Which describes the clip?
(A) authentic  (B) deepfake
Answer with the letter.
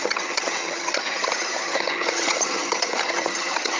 B